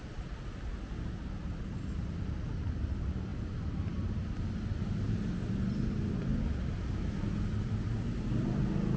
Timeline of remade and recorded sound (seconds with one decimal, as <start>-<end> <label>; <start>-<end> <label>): 0.0-9.0 recorded